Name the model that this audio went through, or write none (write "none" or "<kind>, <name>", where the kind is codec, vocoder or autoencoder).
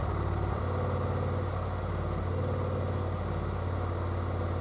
none